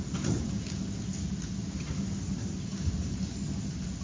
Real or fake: real